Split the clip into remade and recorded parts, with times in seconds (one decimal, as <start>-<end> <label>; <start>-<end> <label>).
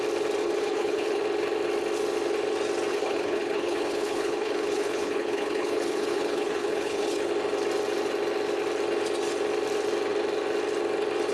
0.0-0.4 recorded; 0.4-1.2 remade; 1.2-2.9 recorded; 2.9-7.3 remade; 7.3-11.3 recorded